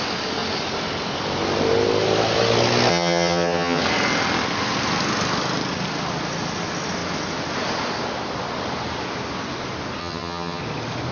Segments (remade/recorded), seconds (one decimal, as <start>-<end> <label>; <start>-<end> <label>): 0.0-2.9 recorded; 2.9-3.8 remade; 3.8-10.0 recorded; 10.0-10.6 remade; 10.6-11.1 recorded